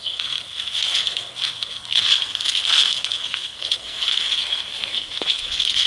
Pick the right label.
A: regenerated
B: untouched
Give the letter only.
A